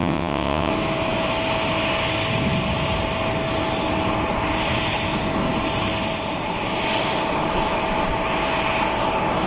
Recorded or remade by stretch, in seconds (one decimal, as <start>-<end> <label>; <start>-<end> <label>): 0.0-0.7 remade; 0.7-9.5 recorded